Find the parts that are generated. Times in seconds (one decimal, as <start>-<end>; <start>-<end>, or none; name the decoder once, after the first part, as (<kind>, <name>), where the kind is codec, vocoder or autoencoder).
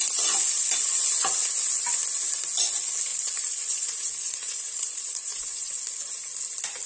3.1-5.8 (vocoder, Vocos)